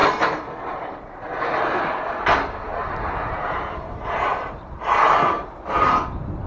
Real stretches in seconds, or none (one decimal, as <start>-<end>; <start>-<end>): 1.2-2.7; 5.6-6.5